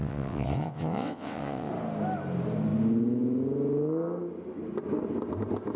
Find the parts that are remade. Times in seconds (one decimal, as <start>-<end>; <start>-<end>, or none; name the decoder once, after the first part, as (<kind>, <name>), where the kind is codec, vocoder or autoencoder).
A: 0.0-1.7 (vocoder, WaveNeXt)